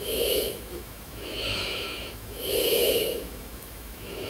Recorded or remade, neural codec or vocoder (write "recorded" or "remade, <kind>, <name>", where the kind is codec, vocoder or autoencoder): remade, autoencoder, DAC-VAE